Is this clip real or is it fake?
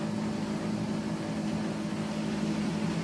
real